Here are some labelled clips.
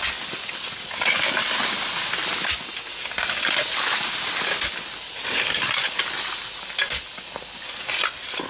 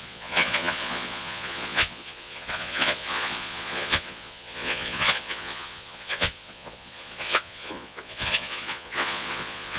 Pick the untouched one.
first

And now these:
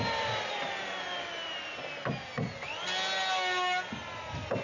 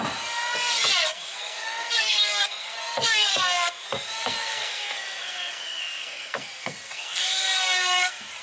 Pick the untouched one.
first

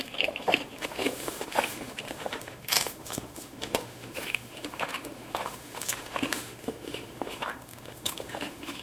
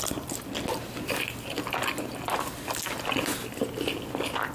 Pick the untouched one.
second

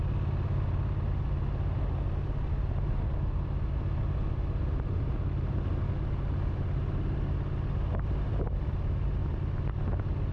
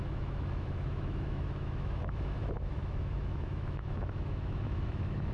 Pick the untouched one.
first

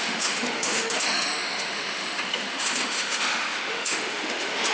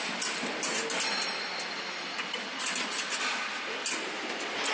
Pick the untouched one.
second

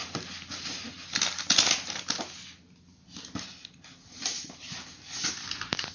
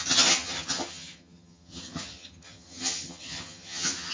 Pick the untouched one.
first